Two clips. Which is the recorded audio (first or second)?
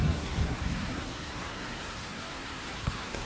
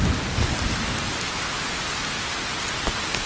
second